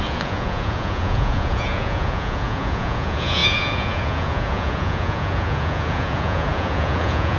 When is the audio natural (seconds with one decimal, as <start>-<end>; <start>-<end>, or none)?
none